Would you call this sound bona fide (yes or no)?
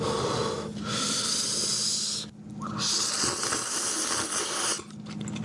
yes